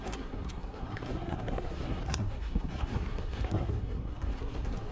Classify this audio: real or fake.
fake